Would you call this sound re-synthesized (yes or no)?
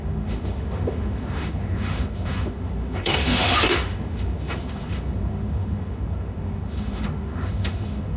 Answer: yes